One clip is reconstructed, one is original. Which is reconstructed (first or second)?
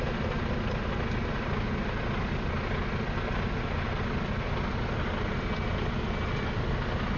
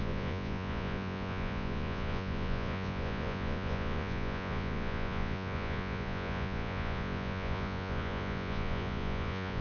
second